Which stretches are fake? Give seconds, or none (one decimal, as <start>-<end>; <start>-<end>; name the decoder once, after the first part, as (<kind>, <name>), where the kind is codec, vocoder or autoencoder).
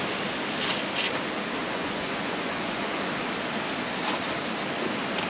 1.6-3.1 (vocoder, Vocos)